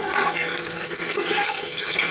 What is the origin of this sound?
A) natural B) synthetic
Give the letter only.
B